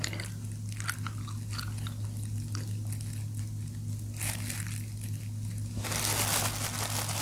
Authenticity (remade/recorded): recorded